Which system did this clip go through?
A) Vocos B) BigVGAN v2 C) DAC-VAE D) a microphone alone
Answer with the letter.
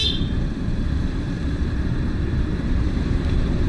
B